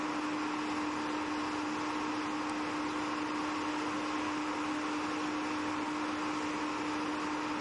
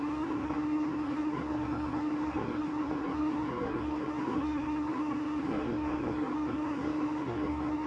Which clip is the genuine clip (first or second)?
first